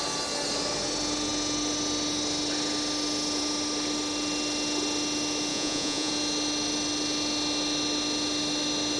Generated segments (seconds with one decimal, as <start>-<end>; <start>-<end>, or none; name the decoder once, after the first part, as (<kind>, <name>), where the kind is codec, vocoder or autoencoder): 5.5-6.1 (vocoder, Vocos)

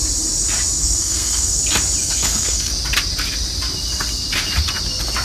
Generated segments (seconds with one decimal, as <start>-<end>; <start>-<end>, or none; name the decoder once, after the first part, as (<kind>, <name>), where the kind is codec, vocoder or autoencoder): 0.8-1.6 (codec, SNAC); 2.0-2.7